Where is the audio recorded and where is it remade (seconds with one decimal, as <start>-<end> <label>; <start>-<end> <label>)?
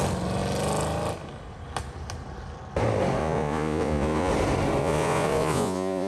0.0-3.2 recorded; 3.2-4.3 remade; 4.3-4.8 recorded; 4.8-6.1 remade